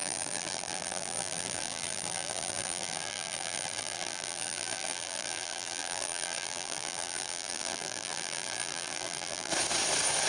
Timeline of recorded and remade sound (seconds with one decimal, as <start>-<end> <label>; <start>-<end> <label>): 0.0-9.5 remade; 9.5-10.3 recorded